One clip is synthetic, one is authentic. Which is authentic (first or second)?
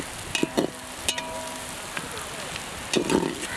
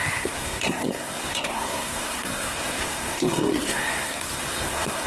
first